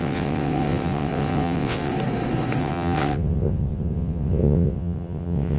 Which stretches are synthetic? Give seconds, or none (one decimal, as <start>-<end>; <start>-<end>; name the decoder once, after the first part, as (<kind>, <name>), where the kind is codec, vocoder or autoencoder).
0.0-1.9 (vocoder, WaveNeXt); 2.6-5.6